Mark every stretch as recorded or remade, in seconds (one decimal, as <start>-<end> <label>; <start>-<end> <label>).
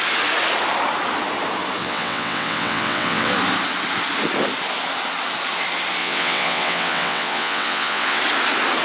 0.0-1.8 recorded; 1.8-3.3 remade; 3.3-6.0 recorded; 6.0-8.2 remade; 8.2-8.8 recorded